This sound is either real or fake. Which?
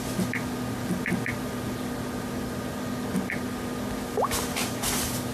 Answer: real